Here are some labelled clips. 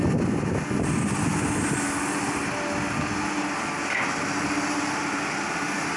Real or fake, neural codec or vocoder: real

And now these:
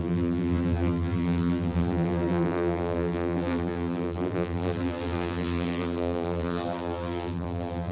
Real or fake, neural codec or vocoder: fake, vocoder, BigVGAN v2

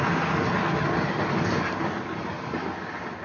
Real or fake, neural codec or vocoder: real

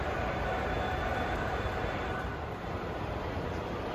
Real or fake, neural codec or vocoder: fake, vocoder, BigVGAN v2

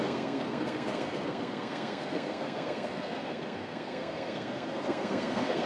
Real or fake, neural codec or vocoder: fake, codec, SNAC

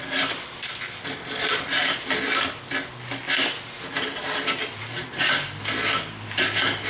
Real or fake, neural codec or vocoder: real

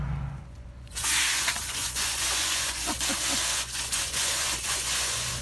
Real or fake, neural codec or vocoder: fake, vocoder, Vocos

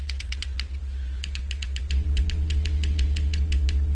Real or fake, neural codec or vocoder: fake, vocoder, WaveNeXt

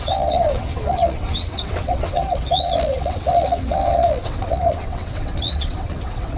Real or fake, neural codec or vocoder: fake, vocoder, WaveNeXt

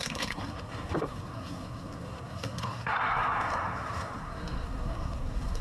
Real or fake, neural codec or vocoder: fake, codec, SNAC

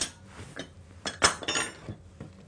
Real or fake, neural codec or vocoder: real